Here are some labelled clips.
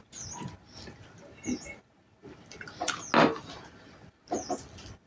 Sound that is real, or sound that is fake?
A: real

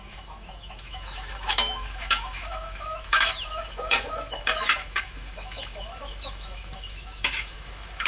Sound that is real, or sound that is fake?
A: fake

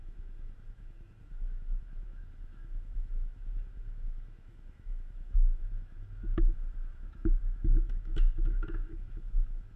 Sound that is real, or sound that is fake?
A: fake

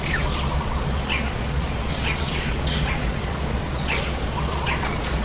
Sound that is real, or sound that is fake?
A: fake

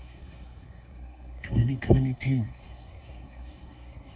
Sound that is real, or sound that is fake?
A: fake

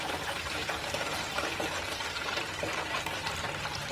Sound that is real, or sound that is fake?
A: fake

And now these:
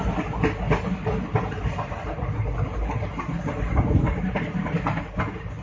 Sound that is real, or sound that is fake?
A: real